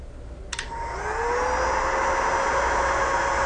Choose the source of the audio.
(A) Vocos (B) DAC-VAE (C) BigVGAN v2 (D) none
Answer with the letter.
D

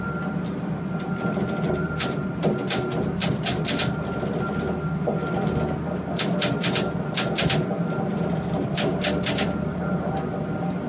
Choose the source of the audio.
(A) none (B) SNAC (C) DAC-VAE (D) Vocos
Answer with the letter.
A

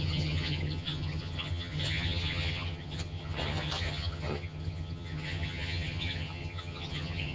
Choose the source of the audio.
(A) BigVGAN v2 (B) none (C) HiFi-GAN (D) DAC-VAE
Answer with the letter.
C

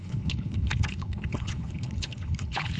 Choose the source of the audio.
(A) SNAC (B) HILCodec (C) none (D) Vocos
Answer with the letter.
B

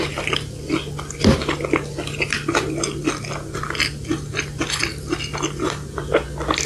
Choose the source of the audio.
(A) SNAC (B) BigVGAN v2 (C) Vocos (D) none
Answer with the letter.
D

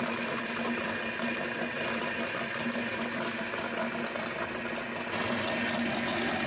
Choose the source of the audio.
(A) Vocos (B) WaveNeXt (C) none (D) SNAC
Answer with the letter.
C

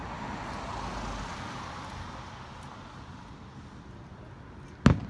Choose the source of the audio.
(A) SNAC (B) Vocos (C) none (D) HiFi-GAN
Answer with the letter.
C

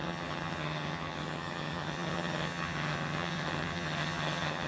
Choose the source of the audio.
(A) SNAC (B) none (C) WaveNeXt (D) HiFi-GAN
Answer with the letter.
D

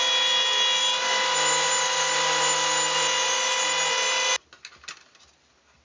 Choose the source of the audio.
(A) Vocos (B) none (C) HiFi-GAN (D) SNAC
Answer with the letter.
B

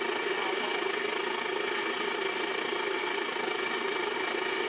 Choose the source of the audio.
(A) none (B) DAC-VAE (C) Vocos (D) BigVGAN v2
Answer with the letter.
A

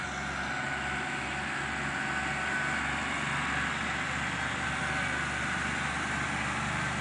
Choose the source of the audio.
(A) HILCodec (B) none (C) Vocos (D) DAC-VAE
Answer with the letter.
B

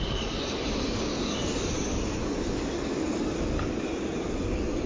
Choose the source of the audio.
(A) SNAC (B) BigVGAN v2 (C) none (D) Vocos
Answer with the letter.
C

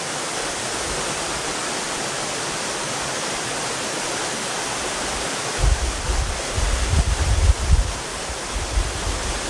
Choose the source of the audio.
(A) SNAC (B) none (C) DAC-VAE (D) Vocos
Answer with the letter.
B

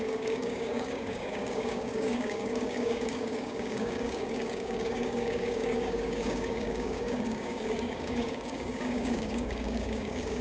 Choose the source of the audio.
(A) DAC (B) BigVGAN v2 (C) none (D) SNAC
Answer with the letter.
A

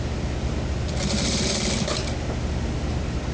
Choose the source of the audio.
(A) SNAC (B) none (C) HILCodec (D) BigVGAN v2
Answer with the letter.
B